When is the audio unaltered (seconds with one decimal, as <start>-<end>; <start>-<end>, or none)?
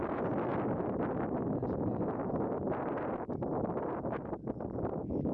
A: 0.0-5.3